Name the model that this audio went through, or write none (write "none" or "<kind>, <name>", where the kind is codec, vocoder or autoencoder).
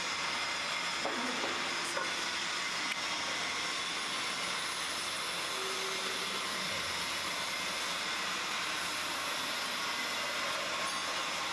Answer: none